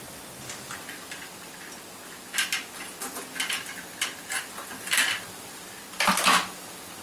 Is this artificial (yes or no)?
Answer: no